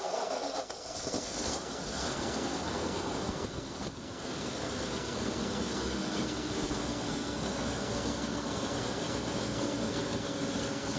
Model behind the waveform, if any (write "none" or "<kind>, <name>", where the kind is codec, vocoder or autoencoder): codec, SNAC